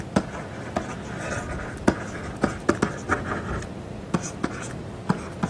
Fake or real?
real